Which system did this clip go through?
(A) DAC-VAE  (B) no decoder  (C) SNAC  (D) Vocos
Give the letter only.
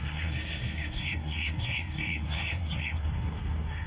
C